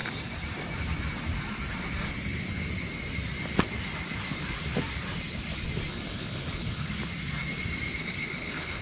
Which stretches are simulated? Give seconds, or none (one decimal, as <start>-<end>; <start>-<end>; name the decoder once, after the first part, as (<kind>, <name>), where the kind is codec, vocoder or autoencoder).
5.9-6.9 (codec, HILCodec); 8.0-8.8

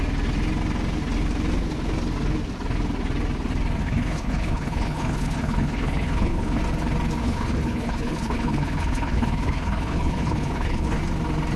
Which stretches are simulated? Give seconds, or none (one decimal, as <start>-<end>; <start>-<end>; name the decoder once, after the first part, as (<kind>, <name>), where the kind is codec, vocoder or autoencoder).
3.8-6.6 (codec, HILCodec); 7.2-11.0

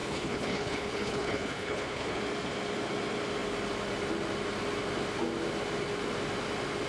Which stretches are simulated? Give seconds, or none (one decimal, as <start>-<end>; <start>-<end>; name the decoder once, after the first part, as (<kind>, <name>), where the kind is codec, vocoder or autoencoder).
0.0-2.2 (codec, HILCodec)

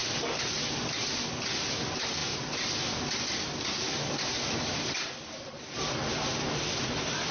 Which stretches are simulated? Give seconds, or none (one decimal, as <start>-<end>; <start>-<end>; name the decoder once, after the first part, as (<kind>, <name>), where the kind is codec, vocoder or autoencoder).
none

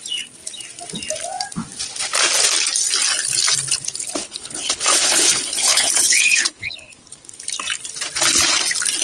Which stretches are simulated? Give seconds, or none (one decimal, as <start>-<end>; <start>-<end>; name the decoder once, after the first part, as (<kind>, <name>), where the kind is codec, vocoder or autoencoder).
4.2-7.4 (codec, HILCodec)

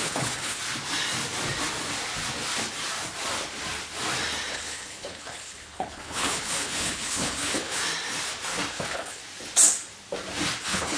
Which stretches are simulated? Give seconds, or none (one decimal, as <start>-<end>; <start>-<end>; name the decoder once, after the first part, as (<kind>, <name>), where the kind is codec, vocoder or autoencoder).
0.0-0.6 (codec, HILCodec); 4.5-7.8; 8.7-9.2; 10.6-11.0